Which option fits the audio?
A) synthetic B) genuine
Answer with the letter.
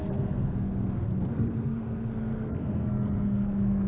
A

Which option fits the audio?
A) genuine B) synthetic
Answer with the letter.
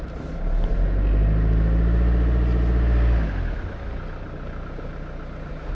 A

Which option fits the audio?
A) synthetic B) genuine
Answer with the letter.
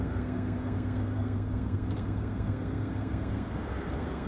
A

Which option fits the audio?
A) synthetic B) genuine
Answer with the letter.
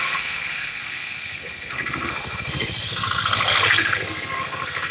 A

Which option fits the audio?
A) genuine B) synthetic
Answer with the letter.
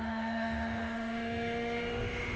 B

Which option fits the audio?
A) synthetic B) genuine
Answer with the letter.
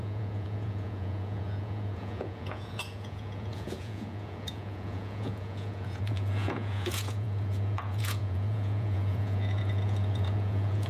A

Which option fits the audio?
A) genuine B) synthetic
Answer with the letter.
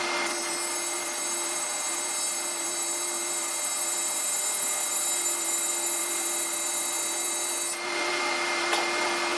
B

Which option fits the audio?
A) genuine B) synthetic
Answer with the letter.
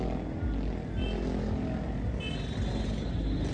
A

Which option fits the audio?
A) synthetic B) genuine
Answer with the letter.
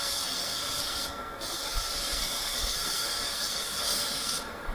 A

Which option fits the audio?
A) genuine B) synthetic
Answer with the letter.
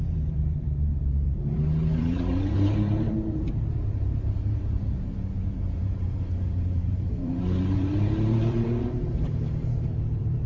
B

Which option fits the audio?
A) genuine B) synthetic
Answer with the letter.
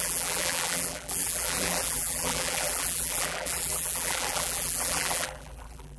B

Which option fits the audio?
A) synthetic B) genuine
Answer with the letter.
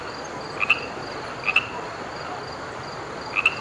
B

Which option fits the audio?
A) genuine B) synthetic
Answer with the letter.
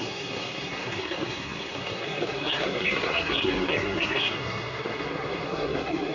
B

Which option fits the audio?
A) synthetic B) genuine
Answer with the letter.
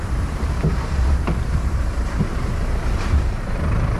A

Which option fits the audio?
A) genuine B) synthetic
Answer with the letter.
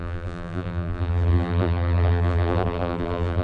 B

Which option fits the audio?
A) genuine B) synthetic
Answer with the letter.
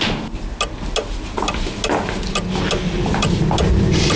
A